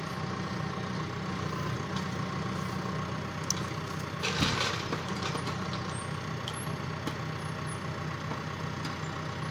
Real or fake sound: real